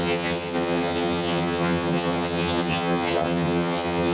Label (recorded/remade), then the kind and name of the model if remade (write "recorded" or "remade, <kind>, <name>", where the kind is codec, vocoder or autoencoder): remade, vocoder, HiFi-GAN